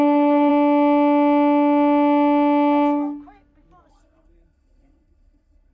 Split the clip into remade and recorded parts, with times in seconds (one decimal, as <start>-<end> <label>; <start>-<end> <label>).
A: 0.0-0.5 remade; 0.5-3.9 recorded; 3.9-5.7 remade